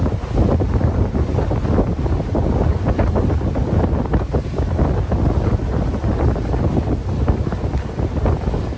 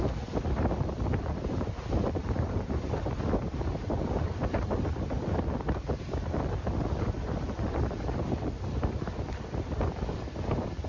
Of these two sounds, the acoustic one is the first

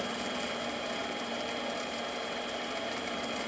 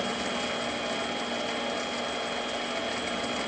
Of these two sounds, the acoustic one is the second